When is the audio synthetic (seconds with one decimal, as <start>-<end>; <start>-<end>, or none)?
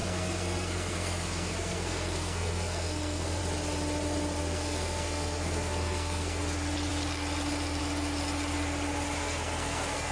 0.0-3.4; 4.4-6.4; 9.2-10.1